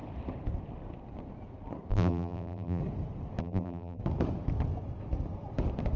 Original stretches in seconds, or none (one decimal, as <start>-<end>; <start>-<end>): 0.0-1.9; 2.8-3.4; 4.0-6.0